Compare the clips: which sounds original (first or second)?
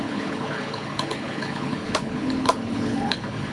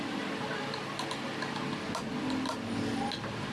second